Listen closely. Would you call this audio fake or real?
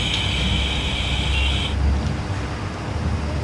real